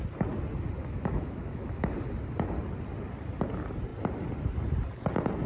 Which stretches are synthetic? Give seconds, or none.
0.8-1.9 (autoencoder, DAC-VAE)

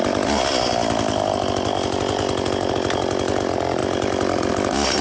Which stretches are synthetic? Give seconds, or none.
none

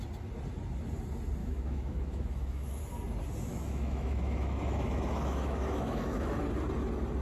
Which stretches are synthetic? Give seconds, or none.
1.4-2.8 (autoencoder, DAC-VAE); 3.5-6.4

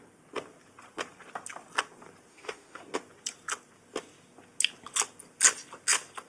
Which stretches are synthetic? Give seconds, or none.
2.3-2.8 (autoencoder, DAC-VAE)

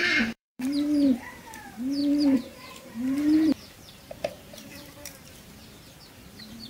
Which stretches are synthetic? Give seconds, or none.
0.0-6.7 (vocoder, BigVGAN v2)

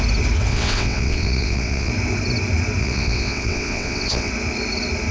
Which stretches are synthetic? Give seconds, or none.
0.5-1.9 (vocoder, WaveNeXt); 2.8-4.3